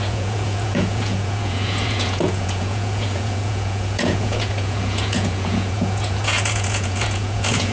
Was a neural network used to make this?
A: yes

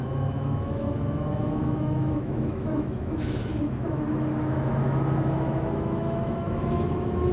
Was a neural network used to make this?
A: yes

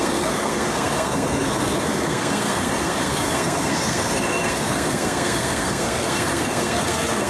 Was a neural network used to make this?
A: yes